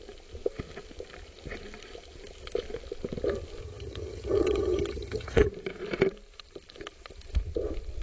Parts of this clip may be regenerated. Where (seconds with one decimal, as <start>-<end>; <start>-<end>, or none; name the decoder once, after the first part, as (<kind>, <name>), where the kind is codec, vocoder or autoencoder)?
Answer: 3.6-5.5 (vocoder, HiFi-GAN)